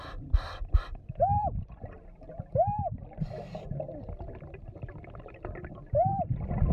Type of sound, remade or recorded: recorded